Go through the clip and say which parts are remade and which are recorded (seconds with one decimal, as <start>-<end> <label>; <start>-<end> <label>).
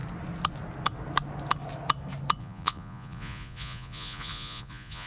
0.0-2.4 recorded; 2.4-5.1 remade